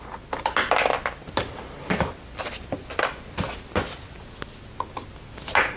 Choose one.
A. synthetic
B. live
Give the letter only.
B